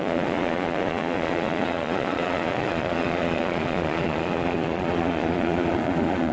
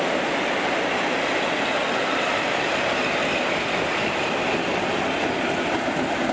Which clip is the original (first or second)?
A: second